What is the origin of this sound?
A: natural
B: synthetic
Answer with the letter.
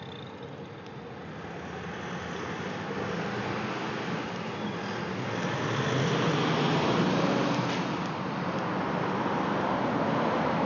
A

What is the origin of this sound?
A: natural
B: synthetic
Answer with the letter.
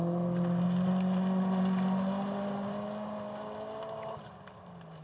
A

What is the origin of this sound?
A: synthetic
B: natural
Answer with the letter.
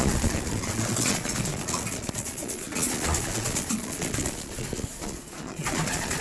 A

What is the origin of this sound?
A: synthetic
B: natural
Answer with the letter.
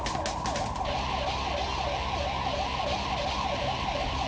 B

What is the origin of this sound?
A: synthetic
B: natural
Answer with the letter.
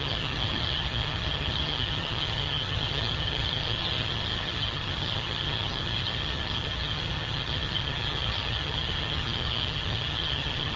A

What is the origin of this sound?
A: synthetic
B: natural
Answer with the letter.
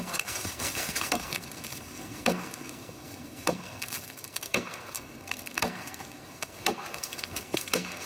A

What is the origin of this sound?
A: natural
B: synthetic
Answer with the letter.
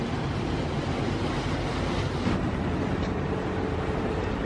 A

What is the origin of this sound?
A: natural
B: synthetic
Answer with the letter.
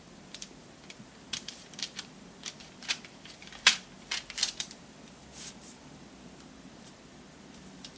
B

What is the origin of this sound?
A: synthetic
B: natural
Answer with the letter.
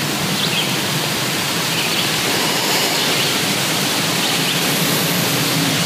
A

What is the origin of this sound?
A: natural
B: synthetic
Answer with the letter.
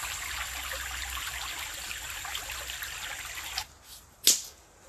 A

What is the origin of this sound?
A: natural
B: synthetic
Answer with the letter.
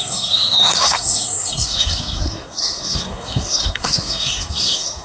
B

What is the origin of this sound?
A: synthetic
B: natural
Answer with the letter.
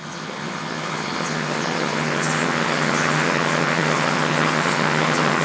A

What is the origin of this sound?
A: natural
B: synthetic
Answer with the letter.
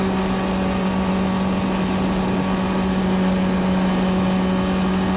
A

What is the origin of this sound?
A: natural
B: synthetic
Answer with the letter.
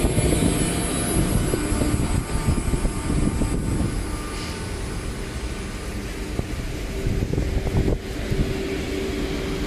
A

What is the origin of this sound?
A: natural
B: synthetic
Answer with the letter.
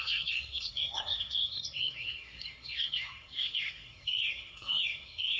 B